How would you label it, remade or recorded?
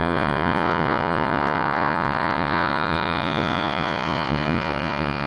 remade